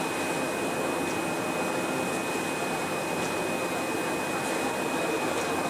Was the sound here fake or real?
real